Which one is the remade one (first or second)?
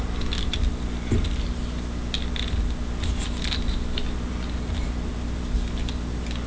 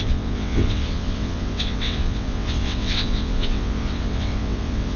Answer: second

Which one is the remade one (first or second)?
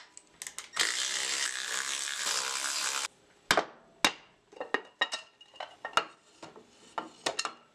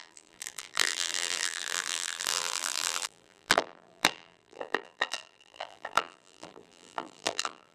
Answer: second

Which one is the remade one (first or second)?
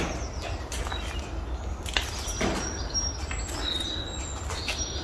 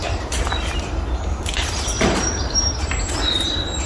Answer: second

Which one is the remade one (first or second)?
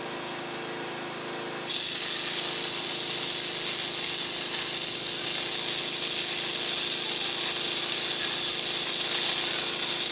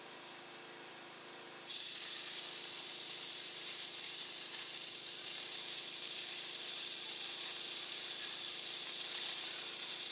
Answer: second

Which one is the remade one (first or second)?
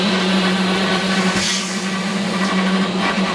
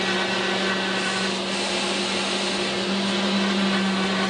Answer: first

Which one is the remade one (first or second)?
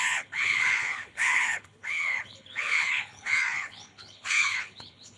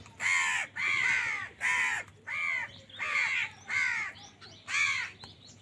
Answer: first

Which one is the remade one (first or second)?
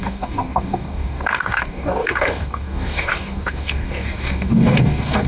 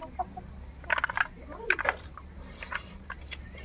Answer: first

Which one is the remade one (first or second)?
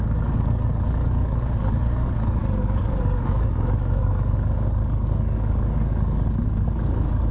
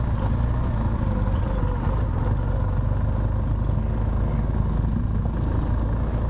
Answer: first